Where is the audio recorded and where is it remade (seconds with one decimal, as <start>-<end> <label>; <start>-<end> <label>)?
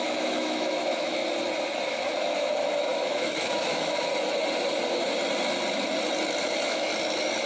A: 0.0-1.2 remade; 1.2-1.9 recorded; 1.9-4.1 remade; 4.1-6.4 recorded; 6.4-6.9 remade; 6.9-7.5 recorded